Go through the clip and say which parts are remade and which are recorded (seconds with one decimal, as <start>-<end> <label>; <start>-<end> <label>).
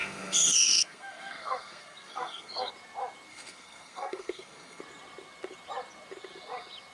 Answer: 0.0-2.7 remade; 2.7-3.3 recorded; 3.3-4.8 remade; 4.8-6.9 recorded